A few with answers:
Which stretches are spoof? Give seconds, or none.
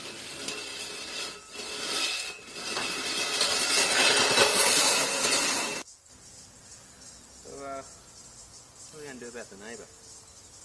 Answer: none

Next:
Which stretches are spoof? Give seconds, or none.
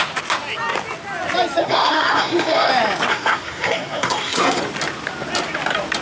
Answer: 1.6-2.7; 3.1-4.6